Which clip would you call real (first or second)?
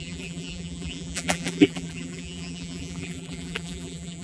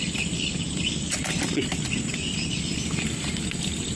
second